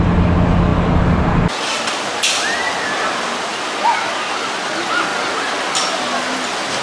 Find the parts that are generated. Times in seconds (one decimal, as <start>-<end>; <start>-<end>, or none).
none

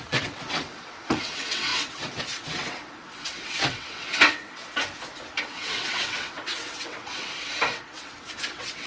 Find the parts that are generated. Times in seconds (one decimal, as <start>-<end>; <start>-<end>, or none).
0.0-4.6; 5.4-8.9

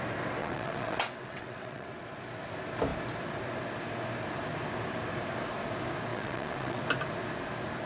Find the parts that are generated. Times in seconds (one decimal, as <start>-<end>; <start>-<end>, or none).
0.4-1.9; 6.1-6.8

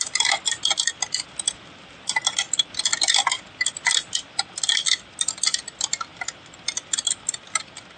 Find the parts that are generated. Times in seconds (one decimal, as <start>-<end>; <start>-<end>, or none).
none

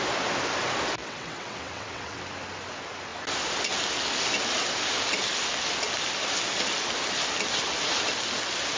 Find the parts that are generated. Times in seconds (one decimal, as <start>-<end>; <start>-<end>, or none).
1.0-2.2

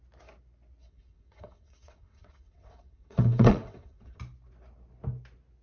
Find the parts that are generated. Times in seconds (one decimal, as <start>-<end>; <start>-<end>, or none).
0.8-4.2